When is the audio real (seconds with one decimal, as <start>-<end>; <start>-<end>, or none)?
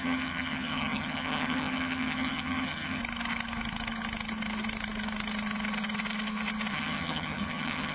3.0-6.7